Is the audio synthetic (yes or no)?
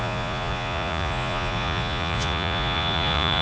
yes